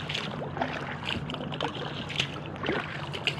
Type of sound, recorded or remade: recorded